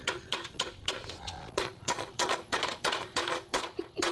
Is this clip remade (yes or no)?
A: yes